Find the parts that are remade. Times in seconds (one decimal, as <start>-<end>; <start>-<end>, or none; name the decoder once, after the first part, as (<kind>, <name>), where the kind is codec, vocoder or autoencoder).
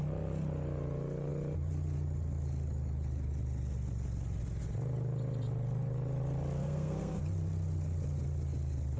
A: 6.6-7.2 (codec, SNAC)